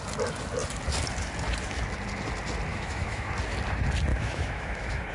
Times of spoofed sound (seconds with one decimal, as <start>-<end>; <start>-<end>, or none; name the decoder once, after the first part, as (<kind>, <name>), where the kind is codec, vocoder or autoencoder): 2.7-3.3 (autoencoder, DAC-VAE); 4.1-5.1